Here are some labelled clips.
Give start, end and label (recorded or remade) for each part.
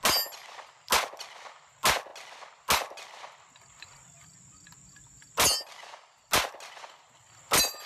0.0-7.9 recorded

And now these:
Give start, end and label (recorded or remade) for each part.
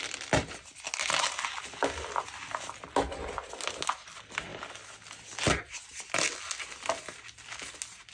0.0-8.1 recorded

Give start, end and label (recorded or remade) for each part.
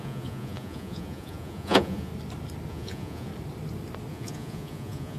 0.0-2.1 remade; 2.1-2.7 recorded; 2.7-3.3 remade; 3.3-4.1 recorded; 4.1-5.2 remade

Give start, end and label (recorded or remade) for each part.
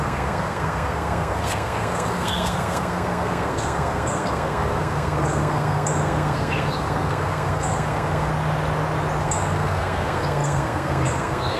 0.0-8.3 remade; 8.3-9.2 recorded; 9.2-11.6 remade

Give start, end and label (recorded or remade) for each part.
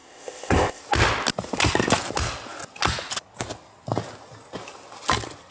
0.0-0.8 remade; 0.8-5.5 recorded